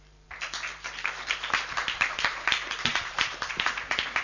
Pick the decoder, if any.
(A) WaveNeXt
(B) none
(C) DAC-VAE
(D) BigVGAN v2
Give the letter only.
D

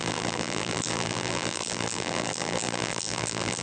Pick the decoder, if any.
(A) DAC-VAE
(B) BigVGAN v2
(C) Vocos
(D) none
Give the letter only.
B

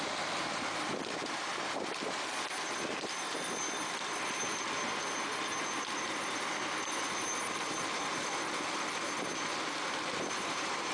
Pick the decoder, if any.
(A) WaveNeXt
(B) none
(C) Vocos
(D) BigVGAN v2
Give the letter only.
B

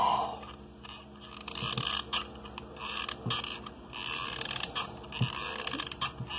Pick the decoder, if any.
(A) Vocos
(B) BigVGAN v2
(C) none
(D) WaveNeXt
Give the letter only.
C